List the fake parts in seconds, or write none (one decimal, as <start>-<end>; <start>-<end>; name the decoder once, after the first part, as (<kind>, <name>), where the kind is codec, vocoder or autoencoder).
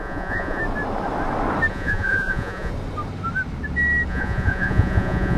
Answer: 0.0-0.6 (vocoder, Vocos); 1.7-2.7; 4.1-5.4